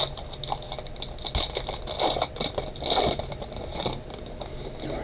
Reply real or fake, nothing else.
real